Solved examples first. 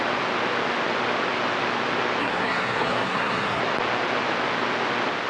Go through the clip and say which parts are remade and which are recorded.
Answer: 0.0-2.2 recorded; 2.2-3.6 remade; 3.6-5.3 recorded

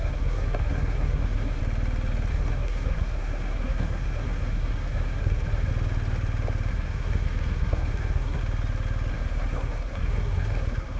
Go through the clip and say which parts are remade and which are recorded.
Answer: 0.0-1.6 remade; 1.6-2.3 recorded; 2.3-5.7 remade; 5.7-6.7 recorded; 6.7-8.4 remade; 8.4-9.1 recorded; 9.1-11.0 remade

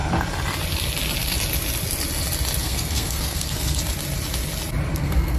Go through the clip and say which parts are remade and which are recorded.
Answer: 0.0-2.6 recorded; 2.6-3.8 remade; 3.8-4.9 recorded; 4.9-5.4 remade

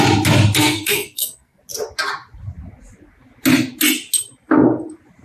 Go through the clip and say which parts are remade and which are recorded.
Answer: 0.0-0.6 recorded; 0.6-1.6 remade; 1.6-5.2 recorded

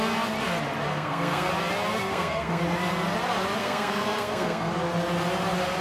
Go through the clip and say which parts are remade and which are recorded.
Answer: 0.0-0.9 recorded; 0.9-1.5 remade; 1.5-2.0 recorded; 2.0-2.6 remade; 2.6-3.6 recorded; 3.6-4.7 remade; 4.7-5.8 recorded

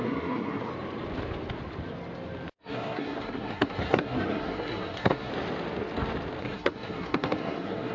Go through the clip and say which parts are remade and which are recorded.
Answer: 0.0-0.7 remade; 0.7-2.6 recorded; 2.6-5.3 remade; 5.3-6.4 recorded; 6.4-7.9 remade